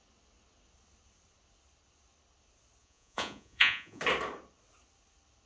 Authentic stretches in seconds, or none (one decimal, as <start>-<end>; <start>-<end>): 0.0-2.8; 4.0-5.5